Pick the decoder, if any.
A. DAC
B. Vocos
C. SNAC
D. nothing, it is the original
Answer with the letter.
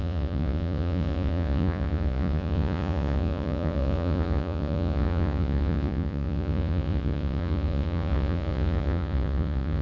B